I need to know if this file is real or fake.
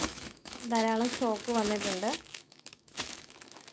fake